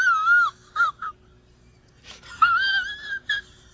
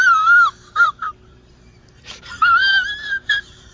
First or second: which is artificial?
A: second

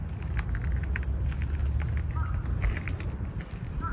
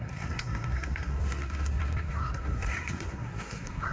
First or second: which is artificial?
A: second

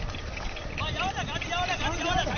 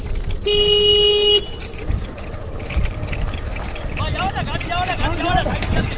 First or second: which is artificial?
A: first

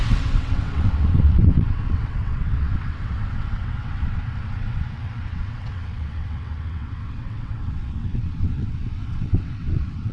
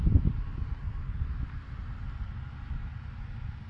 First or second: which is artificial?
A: first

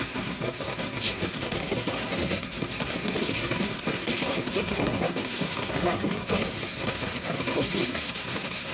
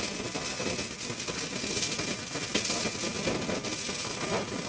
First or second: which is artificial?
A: first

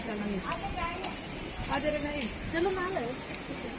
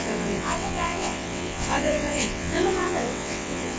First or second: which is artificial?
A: second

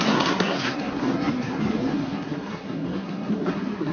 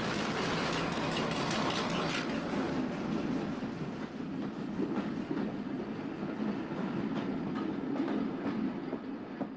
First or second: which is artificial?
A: first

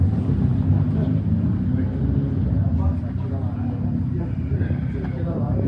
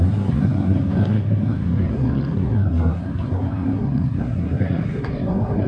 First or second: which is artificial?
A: second